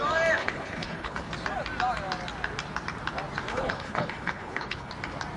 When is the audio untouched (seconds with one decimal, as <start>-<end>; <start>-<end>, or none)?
0.0-0.4; 1.3-3.5; 4.9-5.4